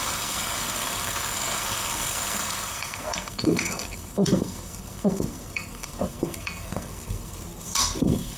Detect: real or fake fake